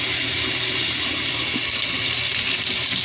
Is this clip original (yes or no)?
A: yes